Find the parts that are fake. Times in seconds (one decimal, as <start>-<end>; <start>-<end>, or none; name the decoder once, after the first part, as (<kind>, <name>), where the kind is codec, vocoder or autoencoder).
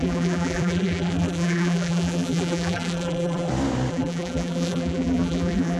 0.0-3.5 (vocoder, BigVGAN v2); 3.9-5.8